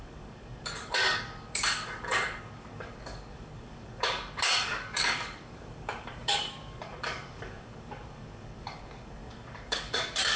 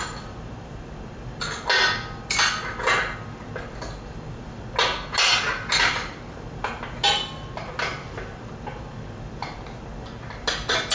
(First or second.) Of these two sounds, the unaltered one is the second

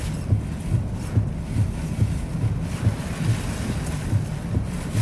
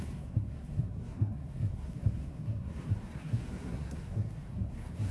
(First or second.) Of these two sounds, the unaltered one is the first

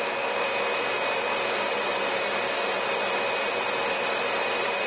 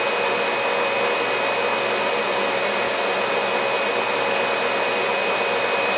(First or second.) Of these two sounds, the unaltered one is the second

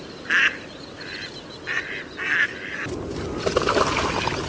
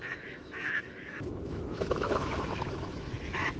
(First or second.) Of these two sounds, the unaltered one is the first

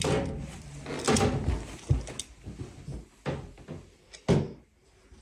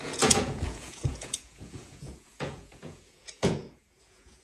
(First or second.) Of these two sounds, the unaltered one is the first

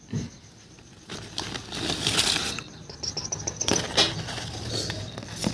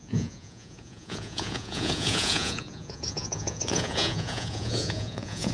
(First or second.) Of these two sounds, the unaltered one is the first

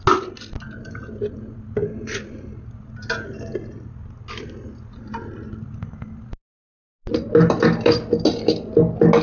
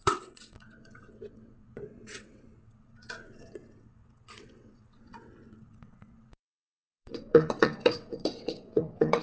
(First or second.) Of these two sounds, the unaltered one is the first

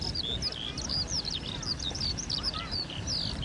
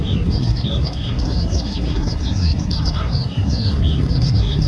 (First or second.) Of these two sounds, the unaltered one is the first